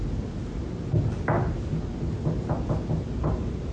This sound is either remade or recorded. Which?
recorded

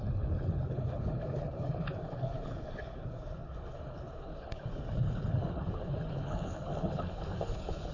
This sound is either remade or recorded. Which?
remade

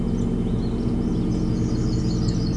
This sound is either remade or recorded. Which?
recorded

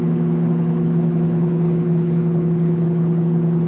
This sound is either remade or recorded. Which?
remade